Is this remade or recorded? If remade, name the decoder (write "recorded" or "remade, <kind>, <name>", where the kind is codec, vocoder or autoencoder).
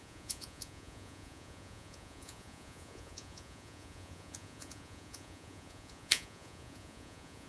remade, vocoder, Vocos